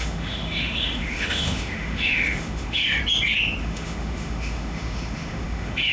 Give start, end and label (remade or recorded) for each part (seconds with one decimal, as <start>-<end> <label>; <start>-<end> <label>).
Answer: 0.0-3.0 remade; 3.0-3.6 recorded; 3.6-5.9 remade